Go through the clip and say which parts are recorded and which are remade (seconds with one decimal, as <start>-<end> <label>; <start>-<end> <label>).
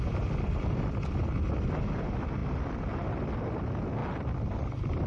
0.0-5.1 recorded